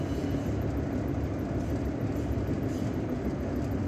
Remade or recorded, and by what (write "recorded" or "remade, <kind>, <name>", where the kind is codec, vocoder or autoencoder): recorded